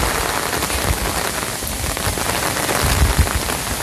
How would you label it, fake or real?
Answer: real